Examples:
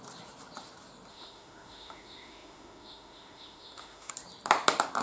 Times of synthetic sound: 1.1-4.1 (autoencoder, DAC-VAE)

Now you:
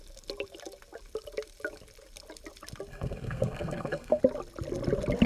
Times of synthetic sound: 2.9-4.2 (codec, SNAC)

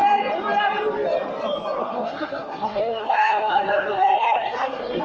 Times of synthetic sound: 1.8-5.0 (codec, SNAC)

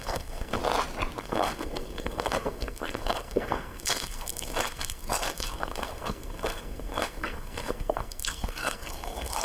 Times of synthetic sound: 0.0-0.6 (codec, SNAC); 1.2-9.4

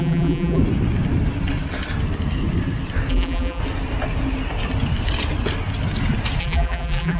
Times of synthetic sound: 0.0-0.6 (vocoder, BigVGAN v2); 3.1-3.6; 6.4-7.2

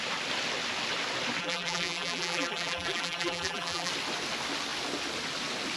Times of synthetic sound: 1.4-3.9 (vocoder, BigVGAN v2)

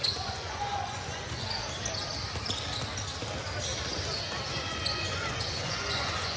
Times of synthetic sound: 0.0-1.6 (vocoder, Vocos); 4.5-6.4

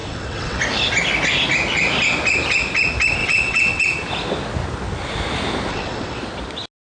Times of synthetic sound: 0.0-0.6 (vocoder, WaveNeXt); 3.2-3.8; 5.7-6.2